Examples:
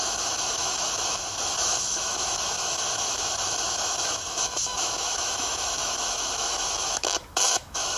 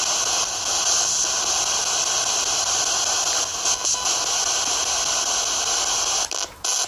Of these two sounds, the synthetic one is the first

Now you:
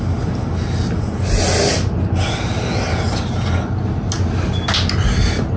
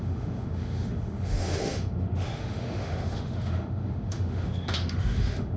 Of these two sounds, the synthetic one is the second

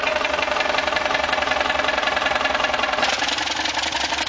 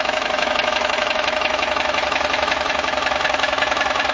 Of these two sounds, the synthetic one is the second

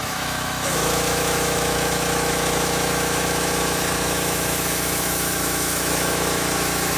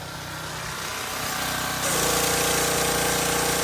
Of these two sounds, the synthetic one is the first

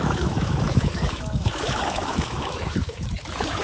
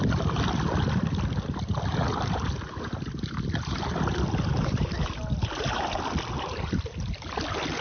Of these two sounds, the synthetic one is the first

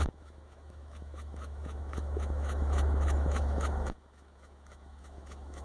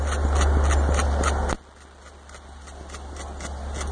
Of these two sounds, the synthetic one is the first